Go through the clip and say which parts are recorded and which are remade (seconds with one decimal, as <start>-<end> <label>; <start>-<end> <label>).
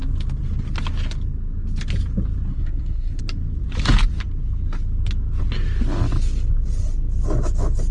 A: 0.0-2.5 recorded; 2.5-3.2 remade; 3.2-7.9 recorded